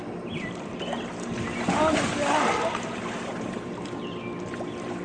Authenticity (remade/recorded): recorded